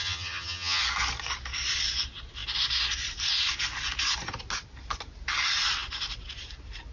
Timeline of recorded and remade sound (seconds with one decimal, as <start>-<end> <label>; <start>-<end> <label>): 0.0-0.8 remade; 0.8-6.9 recorded